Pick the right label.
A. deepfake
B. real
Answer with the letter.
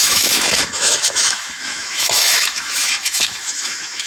A